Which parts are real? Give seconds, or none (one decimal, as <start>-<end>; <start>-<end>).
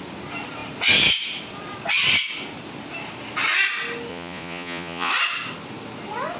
0.0-4.1; 5.1-6.4